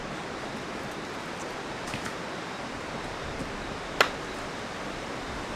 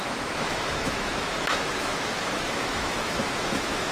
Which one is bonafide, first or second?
first